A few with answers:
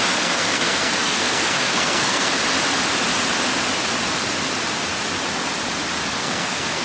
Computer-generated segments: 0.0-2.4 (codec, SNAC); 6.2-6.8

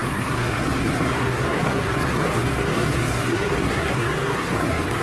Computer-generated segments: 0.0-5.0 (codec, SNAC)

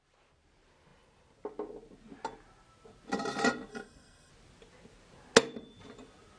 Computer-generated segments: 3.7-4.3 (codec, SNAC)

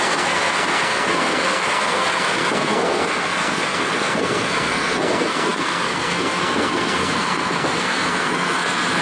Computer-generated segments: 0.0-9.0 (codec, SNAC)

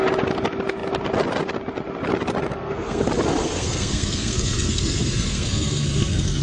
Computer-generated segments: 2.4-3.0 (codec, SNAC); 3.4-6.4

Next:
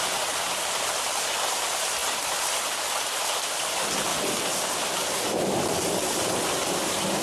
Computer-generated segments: none

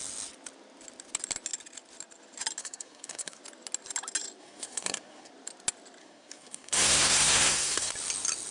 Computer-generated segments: 2.6-3.4 (codec, SNAC); 4.4-5.3; 6.0-7.9

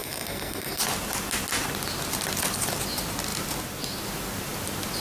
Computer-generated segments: 0.0-0.8 (codec, SNAC)